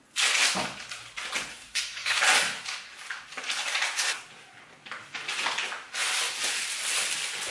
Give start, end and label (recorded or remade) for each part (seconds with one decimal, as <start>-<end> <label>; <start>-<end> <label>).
0.0-1.5 recorded; 1.5-2.2 remade; 2.2-7.5 recorded